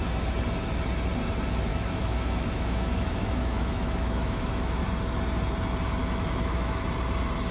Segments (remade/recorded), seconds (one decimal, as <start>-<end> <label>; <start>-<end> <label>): 0.0-1.7 recorded; 1.7-4.8 remade; 4.8-6.0 recorded; 6.0-6.8 remade; 6.8-7.5 recorded